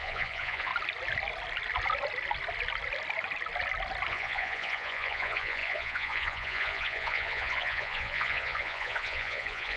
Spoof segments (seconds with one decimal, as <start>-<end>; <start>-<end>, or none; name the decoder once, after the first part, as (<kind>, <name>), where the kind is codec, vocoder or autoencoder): 0.0-0.7 (vocoder, Vocos); 4.1-9.8